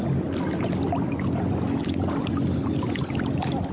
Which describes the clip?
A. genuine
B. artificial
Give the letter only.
A